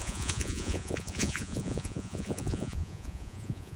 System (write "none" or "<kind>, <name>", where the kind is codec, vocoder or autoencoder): vocoder, Vocos